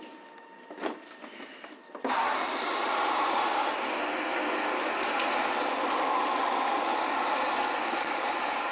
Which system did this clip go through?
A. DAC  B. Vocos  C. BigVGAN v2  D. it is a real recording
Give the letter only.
D